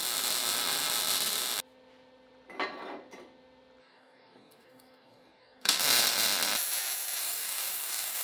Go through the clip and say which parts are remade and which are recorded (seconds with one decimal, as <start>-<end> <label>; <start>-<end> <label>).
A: 0.0-3.8 recorded; 3.8-5.8 remade; 5.8-7.2 recorded; 7.2-8.2 remade